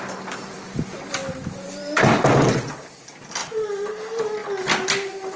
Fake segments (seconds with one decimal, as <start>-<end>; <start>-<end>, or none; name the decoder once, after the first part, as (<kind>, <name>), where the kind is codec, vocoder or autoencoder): 0.0-4.4 (vocoder, BigVGAN v2)